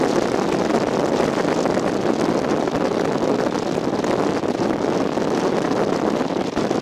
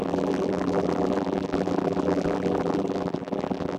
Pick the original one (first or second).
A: first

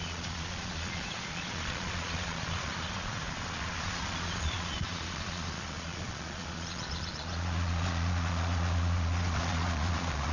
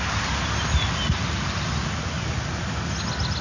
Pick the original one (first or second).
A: second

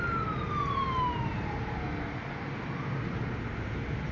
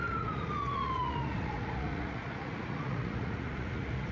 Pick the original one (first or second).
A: first